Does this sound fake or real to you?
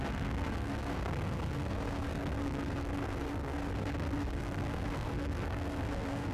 fake